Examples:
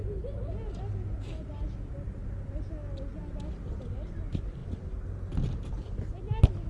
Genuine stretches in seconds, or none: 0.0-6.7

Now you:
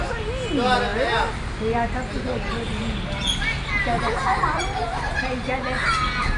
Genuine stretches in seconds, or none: 0.0-6.4

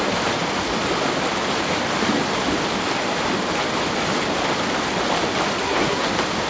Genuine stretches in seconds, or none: 0.0-5.6; 6.1-6.5